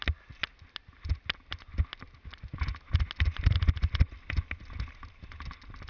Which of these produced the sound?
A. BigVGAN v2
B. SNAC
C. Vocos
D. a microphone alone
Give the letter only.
D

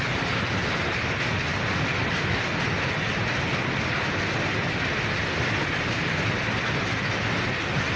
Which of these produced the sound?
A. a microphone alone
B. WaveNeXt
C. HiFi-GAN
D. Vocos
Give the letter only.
A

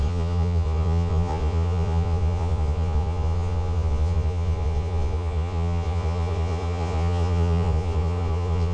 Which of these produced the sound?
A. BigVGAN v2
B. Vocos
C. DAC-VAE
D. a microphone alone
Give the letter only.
B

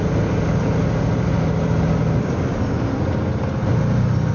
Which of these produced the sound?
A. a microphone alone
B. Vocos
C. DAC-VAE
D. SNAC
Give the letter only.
A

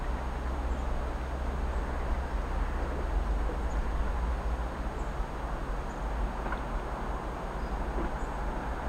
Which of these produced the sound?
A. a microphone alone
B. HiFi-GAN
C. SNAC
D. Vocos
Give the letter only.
A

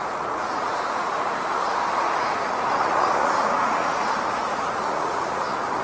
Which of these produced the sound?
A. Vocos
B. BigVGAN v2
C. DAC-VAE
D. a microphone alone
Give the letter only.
A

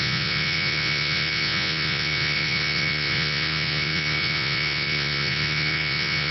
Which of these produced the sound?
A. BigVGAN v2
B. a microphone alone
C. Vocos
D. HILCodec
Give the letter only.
C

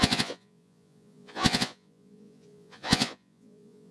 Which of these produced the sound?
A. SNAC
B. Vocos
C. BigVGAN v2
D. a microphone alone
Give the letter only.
B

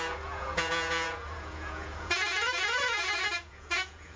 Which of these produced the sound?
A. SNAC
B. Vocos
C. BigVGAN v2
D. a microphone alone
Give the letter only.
B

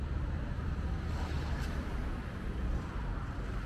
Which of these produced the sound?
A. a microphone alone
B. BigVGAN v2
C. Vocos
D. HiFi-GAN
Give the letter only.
A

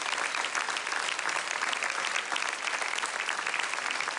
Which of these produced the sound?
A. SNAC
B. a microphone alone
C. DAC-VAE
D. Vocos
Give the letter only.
B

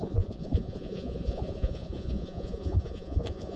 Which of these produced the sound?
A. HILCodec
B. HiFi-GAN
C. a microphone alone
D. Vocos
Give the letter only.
D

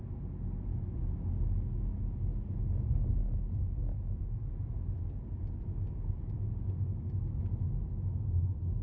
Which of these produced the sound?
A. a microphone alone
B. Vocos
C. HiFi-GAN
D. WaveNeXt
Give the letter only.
A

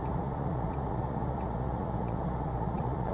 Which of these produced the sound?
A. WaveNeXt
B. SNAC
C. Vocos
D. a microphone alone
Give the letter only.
C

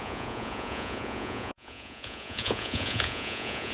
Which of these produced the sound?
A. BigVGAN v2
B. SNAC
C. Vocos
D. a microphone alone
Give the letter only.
C